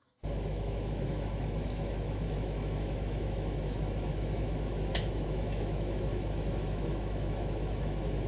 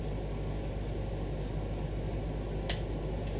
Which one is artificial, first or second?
first